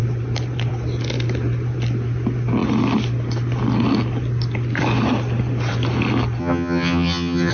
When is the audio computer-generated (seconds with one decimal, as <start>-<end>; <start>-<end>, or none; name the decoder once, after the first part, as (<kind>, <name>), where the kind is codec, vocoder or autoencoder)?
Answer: 6.4-7.5 (vocoder, HiFi-GAN)